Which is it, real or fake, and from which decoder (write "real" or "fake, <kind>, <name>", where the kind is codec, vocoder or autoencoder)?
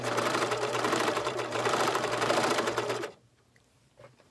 fake, vocoder, BigVGAN v2